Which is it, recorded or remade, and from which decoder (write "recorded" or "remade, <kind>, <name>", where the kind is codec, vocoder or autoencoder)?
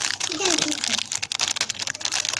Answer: recorded